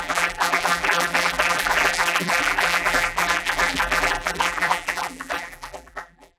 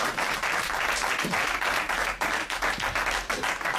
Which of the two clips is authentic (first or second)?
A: second